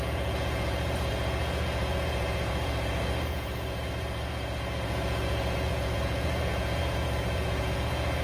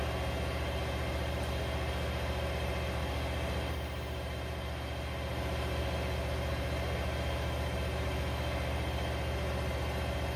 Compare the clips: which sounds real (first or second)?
second